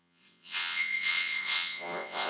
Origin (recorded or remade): remade